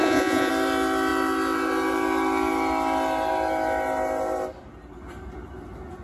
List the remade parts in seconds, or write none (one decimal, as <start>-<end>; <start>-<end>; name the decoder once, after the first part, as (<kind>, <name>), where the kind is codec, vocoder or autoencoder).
0.0-0.5 (vocoder, Vocos)